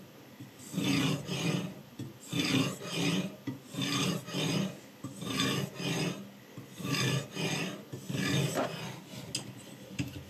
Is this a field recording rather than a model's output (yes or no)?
yes